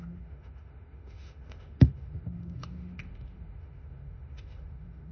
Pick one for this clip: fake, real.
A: fake